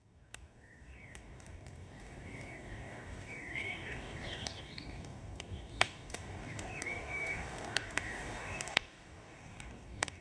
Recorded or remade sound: remade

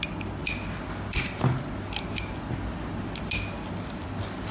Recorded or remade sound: recorded